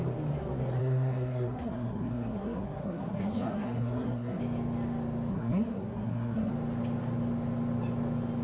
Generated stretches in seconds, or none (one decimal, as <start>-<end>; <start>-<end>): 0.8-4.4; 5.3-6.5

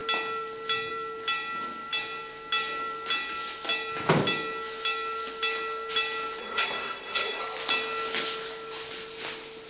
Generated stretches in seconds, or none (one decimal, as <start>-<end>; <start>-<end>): 6.4-7.4

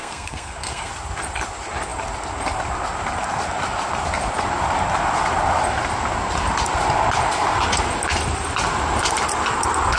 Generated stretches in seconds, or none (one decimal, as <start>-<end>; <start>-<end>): 0.0-0.9

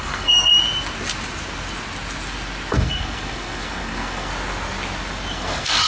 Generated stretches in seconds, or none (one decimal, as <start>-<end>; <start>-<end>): 0.0-0.5; 2.7-4.3; 5.3-5.9

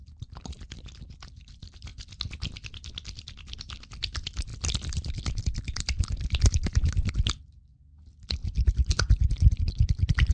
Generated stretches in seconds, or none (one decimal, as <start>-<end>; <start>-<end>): none